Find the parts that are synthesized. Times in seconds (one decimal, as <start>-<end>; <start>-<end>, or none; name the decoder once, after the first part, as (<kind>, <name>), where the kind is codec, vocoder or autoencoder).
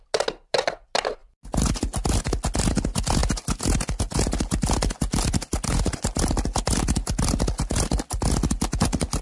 none